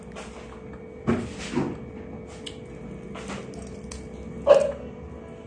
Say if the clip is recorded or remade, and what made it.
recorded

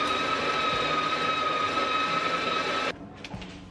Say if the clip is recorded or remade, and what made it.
recorded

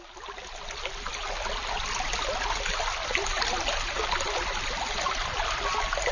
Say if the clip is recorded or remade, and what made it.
recorded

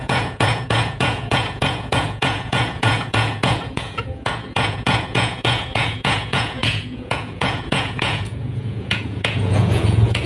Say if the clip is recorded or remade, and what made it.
remade, vocoder, Vocos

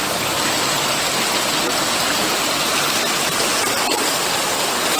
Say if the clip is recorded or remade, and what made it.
recorded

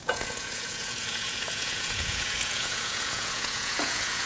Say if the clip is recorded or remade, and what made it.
remade, vocoder, Vocos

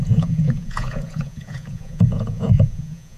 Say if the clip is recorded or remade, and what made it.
remade, vocoder, Vocos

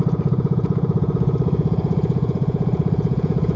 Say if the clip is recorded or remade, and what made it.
remade, vocoder, Vocos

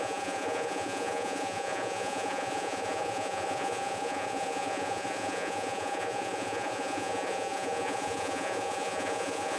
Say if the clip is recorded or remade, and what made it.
remade, vocoder, Vocos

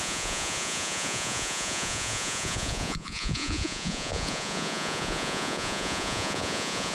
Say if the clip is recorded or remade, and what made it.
remade, vocoder, Vocos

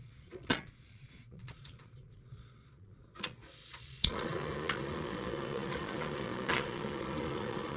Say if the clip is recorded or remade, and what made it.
remade, vocoder, Vocos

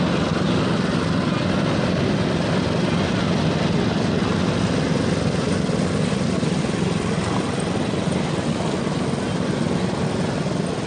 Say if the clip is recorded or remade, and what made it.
recorded